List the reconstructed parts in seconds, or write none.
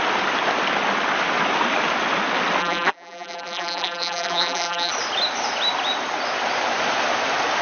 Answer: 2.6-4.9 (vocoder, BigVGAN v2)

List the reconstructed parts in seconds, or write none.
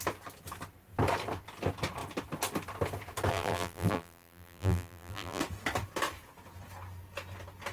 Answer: 3.3-5.4 (vocoder, BigVGAN v2)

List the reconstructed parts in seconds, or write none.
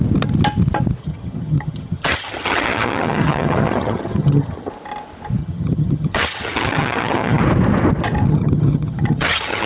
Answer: 1.0-4.7 (vocoder, HiFi-GAN); 5.4-7.4; 8.3-9.7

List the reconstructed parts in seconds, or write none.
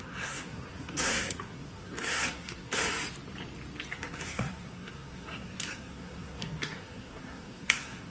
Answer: 0.0-2.8 (codec, SNAC); 3.9-8.1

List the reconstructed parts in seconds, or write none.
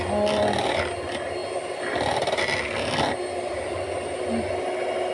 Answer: 1.4-4.5 (vocoder, BigVGAN v2)